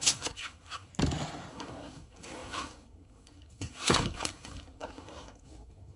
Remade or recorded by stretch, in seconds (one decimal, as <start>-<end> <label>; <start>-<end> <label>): 0.0-0.9 remade; 0.9-1.5 recorded; 1.5-6.0 remade